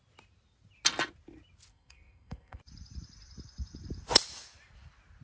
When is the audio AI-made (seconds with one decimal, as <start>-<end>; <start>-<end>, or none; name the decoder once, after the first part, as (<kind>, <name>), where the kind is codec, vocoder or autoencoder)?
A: 1.7-2.6 (codec, SNAC)